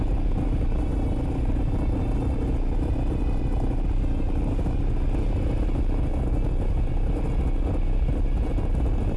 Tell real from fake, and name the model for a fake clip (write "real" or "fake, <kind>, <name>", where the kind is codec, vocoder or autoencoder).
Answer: real